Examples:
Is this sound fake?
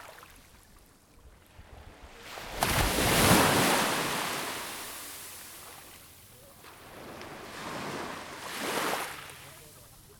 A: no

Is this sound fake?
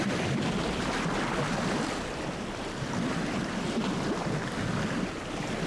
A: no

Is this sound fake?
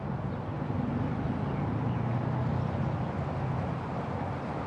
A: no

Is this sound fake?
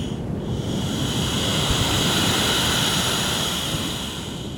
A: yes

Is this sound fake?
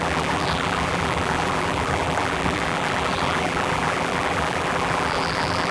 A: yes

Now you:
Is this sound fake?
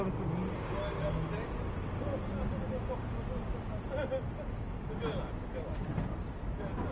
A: no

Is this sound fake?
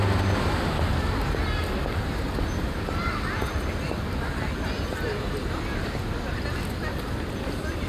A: no